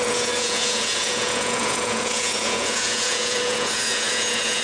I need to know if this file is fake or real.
fake